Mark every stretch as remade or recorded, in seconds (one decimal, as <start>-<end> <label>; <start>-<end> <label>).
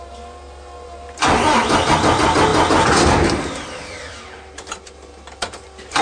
0.0-6.0 recorded